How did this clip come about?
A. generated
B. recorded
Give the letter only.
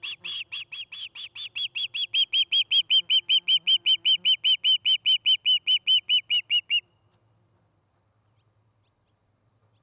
B